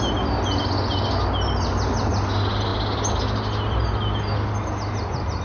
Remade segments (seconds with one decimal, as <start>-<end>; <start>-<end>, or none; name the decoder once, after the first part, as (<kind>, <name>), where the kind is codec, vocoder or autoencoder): none